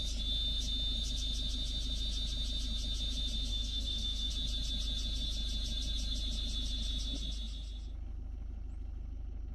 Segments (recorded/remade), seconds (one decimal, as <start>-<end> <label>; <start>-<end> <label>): 0.0-3.5 recorded; 3.5-4.3 remade; 4.3-9.5 recorded